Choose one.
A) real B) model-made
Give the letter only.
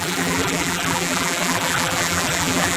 B